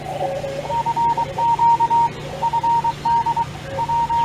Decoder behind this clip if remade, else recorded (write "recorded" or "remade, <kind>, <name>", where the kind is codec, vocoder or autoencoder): recorded